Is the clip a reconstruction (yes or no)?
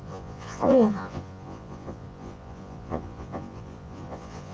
yes